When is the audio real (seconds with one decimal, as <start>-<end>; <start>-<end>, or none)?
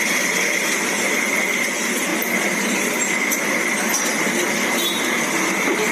0.0-5.9